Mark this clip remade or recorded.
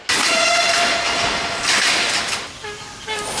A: recorded